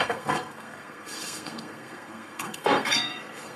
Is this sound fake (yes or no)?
yes